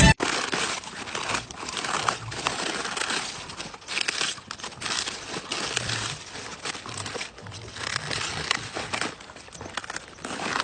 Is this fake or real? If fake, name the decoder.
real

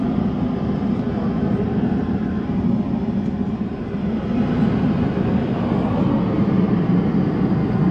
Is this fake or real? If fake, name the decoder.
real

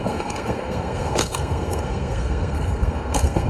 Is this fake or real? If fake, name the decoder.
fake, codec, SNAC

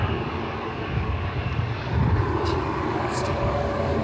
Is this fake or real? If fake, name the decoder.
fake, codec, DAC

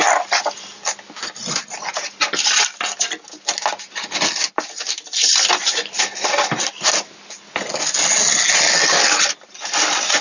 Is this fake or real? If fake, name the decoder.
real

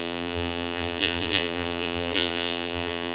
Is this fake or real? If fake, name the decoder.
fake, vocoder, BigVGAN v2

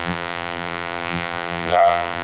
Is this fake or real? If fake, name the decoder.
fake, vocoder, BigVGAN v2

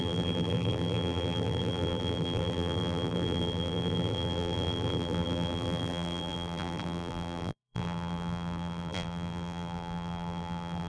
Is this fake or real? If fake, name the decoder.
fake, vocoder, BigVGAN v2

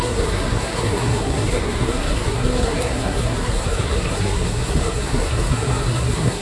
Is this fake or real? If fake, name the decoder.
fake, codec, SNAC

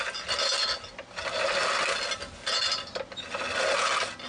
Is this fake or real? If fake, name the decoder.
real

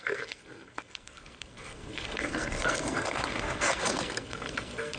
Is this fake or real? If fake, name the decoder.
fake, codec, SNAC